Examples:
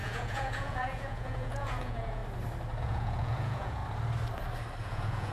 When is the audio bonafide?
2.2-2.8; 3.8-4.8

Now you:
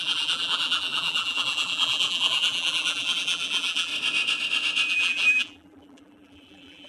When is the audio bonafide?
3.9-4.9

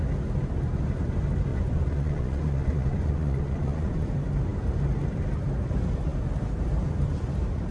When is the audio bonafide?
0.0-1.5; 4.1-7.7

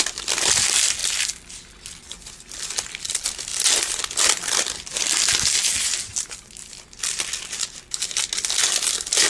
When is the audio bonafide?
0.0-9.3